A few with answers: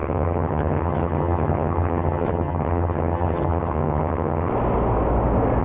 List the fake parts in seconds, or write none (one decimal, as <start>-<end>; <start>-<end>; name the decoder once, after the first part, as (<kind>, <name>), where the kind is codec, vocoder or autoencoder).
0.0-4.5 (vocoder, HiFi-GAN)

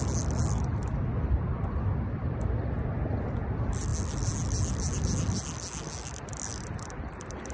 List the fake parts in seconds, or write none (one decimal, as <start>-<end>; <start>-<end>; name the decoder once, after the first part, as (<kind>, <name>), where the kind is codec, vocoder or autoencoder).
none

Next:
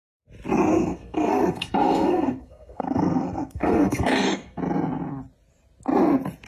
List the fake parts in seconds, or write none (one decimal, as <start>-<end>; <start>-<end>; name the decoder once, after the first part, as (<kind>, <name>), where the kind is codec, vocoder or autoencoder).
0.7-4.6 (codec, SNAC)

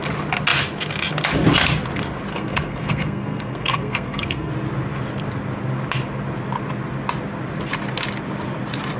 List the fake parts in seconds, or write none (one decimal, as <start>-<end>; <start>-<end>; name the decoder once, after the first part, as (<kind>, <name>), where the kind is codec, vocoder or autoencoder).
2.3-4.5 (codec, SNAC)